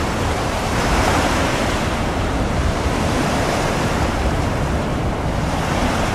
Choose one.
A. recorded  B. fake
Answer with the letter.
B